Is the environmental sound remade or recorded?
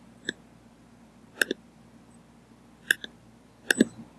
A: recorded